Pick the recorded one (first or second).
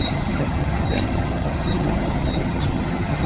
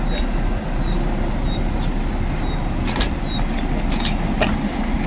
second